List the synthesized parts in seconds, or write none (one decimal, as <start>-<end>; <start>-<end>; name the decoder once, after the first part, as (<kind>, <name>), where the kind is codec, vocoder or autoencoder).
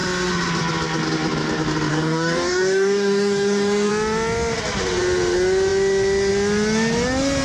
1.9-3.9 (codec, DAC)